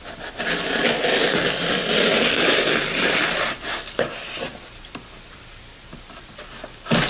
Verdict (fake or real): real